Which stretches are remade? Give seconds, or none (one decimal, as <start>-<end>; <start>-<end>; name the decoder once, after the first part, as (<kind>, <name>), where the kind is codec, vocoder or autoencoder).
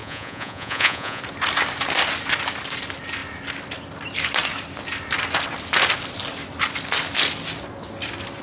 0.0-1.2 (vocoder, Vocos)